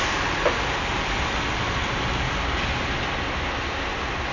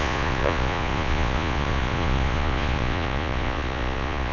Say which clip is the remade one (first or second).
second